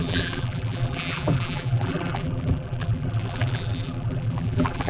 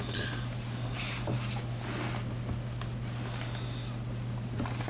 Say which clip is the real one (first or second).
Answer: second